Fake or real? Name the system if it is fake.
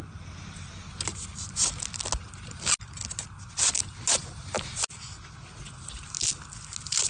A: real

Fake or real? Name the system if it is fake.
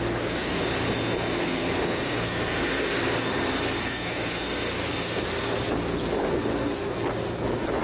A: real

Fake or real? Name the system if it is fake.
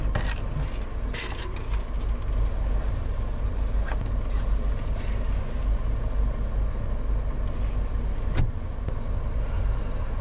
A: real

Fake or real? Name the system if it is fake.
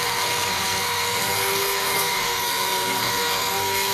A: fake, codec, SNAC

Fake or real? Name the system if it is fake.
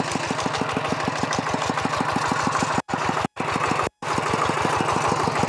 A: real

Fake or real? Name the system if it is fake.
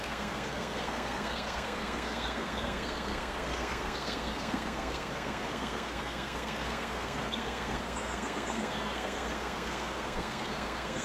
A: fake, codec, SNAC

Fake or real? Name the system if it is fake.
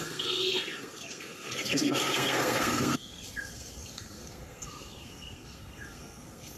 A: fake, codec, SNAC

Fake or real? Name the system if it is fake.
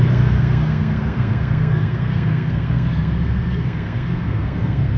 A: fake, codec, SNAC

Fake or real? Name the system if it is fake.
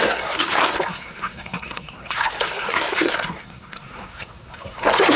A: fake, codec, SNAC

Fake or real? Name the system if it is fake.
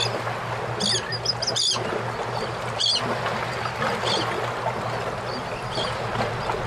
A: real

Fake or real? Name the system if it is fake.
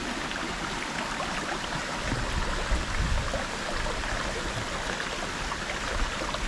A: real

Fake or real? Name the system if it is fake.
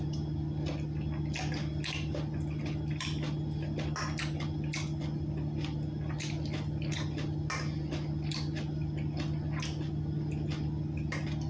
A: real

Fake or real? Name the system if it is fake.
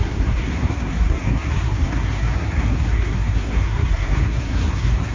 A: fake, codec, SNAC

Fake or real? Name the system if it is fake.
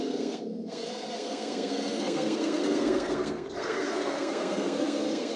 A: fake, codec, SNAC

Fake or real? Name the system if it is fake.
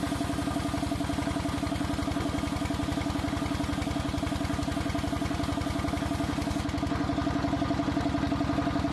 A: real